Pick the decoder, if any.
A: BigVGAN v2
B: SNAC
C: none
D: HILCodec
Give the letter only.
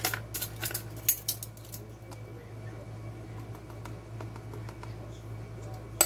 C